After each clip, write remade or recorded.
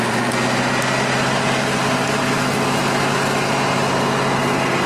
recorded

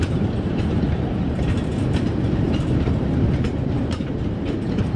remade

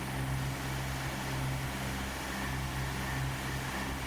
recorded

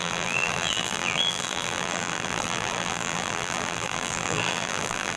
remade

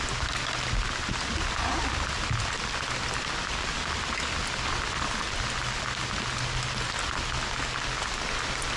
recorded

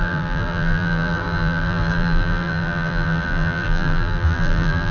remade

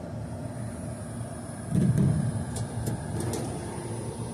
recorded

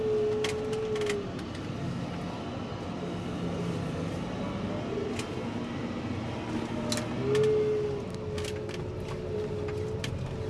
recorded